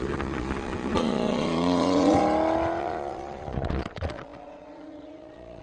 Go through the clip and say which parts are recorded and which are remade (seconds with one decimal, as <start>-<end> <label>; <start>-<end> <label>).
0.0-2.2 remade; 2.2-2.8 recorded; 2.8-5.6 remade